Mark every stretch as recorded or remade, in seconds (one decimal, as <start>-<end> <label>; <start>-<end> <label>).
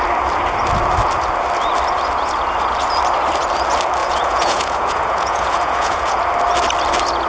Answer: 0.0-4.0 recorded; 4.0-6.2 remade; 6.2-7.3 recorded